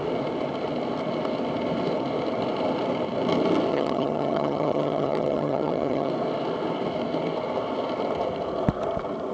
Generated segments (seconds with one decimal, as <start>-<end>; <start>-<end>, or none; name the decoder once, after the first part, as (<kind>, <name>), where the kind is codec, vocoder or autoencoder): 3.7-6.1 (vocoder, HiFi-GAN)

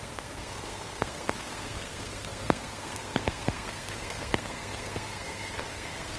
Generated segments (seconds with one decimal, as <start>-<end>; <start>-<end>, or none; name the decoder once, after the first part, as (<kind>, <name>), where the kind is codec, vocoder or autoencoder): 0.0-6.2 (codec, SNAC)

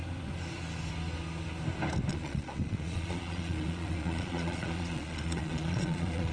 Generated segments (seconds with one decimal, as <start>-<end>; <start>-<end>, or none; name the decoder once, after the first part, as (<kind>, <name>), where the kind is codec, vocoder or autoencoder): 2.1-6.3 (vocoder, Vocos)

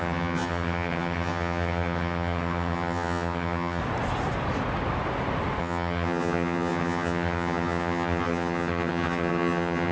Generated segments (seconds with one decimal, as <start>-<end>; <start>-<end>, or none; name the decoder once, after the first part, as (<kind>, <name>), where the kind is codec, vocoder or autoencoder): 0.0-3.8 (vocoder, HiFi-GAN); 5.6-9.9

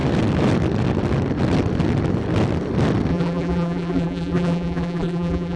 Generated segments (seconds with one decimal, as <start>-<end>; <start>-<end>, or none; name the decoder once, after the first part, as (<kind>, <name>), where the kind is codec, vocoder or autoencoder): 3.1-5.6 (vocoder, BigVGAN v2)